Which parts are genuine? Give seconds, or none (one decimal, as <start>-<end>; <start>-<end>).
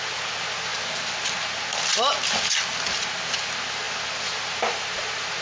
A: 0.0-5.4